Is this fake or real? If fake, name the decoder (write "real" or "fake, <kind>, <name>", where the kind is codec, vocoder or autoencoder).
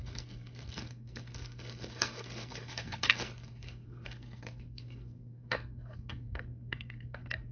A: fake, codec, SNAC